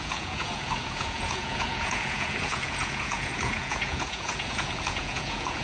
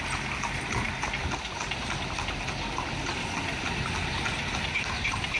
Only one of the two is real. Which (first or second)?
second